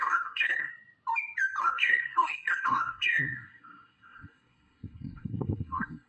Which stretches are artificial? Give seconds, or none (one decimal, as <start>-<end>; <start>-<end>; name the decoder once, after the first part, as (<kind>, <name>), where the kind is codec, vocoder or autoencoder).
0.0-0.7 (codec, SNAC); 1.6-6.1